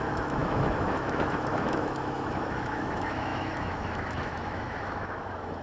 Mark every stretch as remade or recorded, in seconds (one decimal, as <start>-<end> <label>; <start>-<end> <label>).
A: 0.0-5.6 remade